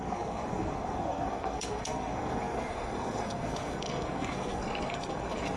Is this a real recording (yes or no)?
no